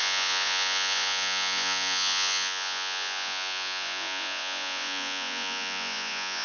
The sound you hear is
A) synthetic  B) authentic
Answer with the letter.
A